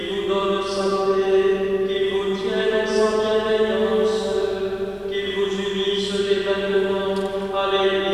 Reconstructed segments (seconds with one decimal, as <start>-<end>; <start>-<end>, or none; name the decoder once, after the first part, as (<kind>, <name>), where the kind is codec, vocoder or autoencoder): none